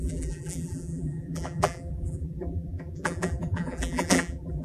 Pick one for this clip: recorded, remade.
remade